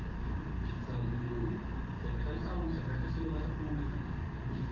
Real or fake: real